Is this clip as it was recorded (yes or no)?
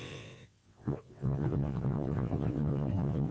no